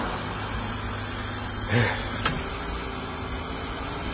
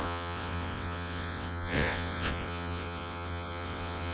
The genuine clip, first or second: first